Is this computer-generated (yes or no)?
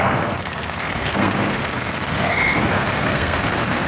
yes